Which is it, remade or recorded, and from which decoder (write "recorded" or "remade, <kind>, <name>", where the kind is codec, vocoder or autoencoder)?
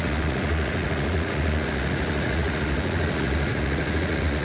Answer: remade, vocoder, Vocos